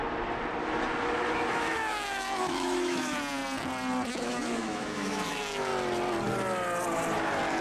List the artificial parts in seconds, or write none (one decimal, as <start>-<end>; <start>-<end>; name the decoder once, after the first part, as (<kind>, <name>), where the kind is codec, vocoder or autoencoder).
1.5-3.4 (autoencoder, DAC-VAE); 4.1-5.7